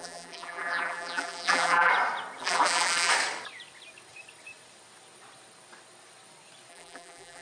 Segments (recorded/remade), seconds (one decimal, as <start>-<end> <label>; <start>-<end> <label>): 0.0-1.9 remade; 1.9-2.4 recorded; 2.4-3.1 remade; 3.1-6.7 recorded; 6.7-7.4 remade